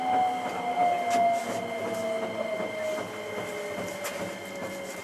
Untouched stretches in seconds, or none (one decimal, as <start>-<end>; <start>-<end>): 0.0-5.0